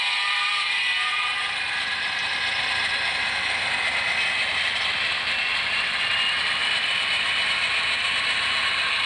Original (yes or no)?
no